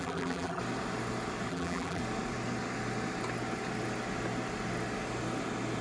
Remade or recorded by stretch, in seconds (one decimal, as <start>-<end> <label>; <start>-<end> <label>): 0.0-0.6 remade; 0.6-1.5 recorded; 1.5-2.0 remade; 2.0-5.8 recorded